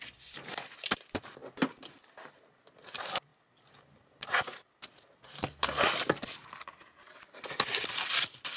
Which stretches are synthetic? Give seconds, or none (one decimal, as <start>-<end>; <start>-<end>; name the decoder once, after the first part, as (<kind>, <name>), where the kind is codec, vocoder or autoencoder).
none